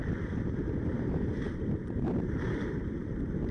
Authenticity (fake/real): fake